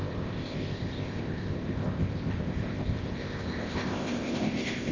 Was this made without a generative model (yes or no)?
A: no